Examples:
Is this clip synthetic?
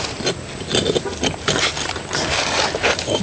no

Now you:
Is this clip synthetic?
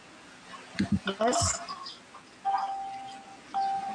no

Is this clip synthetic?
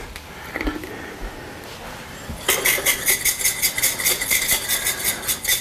no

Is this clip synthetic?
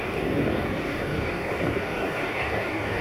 yes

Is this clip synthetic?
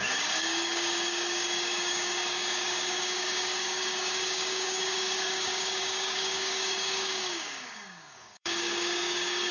yes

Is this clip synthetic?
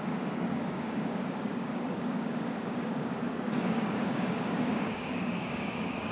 yes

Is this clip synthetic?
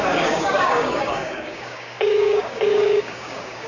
yes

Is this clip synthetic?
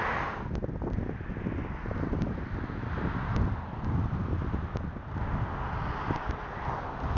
no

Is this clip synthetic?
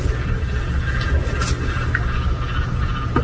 no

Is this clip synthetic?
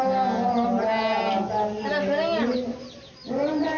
no